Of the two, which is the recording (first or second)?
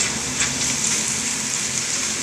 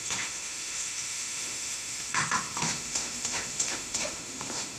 first